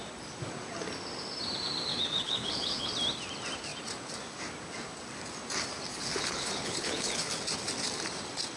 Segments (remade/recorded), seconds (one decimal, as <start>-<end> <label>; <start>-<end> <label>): 0.0-1.9 recorded; 1.9-2.9 remade; 2.9-5.9 recorded; 5.9-7.4 remade; 7.4-8.6 recorded